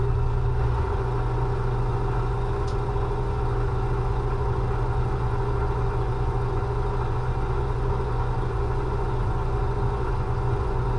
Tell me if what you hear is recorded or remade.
remade